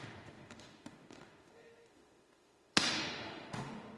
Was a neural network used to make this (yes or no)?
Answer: yes